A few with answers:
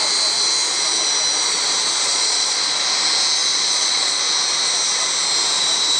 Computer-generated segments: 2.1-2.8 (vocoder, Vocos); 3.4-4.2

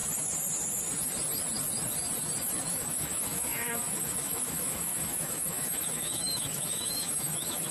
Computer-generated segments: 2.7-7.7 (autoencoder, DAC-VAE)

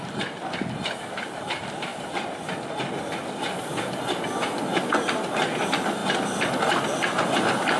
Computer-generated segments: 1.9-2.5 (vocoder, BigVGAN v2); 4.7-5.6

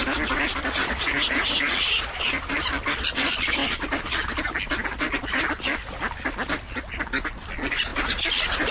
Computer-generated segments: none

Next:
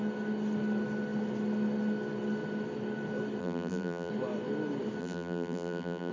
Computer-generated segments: 3.4-4.1 (vocoder, BigVGAN v2); 5.0-6.1